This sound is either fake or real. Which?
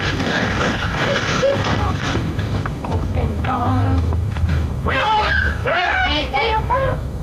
fake